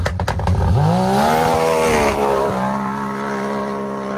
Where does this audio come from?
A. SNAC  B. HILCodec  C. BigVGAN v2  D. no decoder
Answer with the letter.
D